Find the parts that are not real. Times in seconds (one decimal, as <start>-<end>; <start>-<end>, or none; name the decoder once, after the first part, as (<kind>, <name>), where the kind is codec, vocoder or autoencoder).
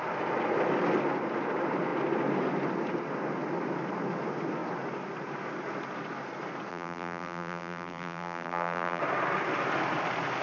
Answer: 6.7-9.0 (vocoder, BigVGAN v2)